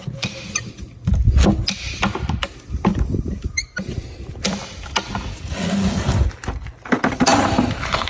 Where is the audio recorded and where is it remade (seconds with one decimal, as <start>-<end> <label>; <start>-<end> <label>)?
0.0-2.9 recorded; 2.9-4.1 remade; 4.1-7.3 recorded; 7.3-8.1 remade

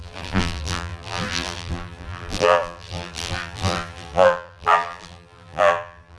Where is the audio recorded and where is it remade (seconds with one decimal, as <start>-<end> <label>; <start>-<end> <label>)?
0.0-6.2 remade

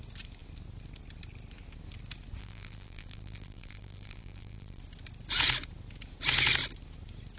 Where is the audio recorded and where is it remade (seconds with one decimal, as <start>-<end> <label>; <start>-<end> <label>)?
0.0-2.4 recorded; 2.4-4.8 remade; 4.8-7.4 recorded

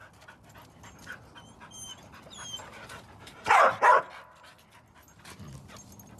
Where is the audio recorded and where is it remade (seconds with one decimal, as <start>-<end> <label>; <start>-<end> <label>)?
0.0-1.9 recorded; 1.9-4.0 remade; 4.0-6.2 recorded

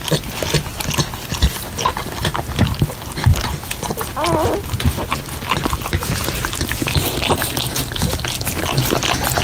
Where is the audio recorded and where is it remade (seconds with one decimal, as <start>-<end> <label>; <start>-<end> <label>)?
0.0-9.4 recorded

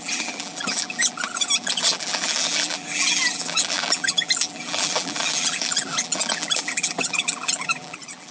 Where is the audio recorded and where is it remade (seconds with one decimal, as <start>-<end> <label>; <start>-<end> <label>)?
0.0-8.3 remade